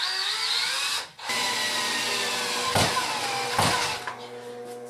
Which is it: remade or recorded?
recorded